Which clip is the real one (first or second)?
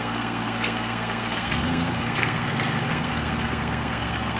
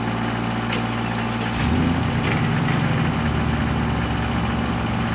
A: second